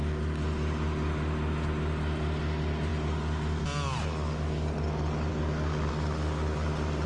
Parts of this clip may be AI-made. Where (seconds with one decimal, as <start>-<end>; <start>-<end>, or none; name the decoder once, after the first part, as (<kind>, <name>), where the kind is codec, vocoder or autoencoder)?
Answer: 5.3-5.9 (codec, DAC)